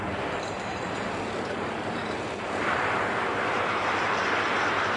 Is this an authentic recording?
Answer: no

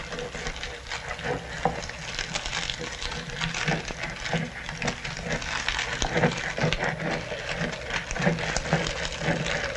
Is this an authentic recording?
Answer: yes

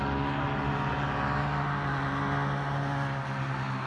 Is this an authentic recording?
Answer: yes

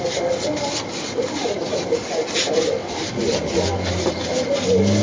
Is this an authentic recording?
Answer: yes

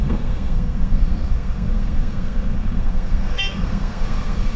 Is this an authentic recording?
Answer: no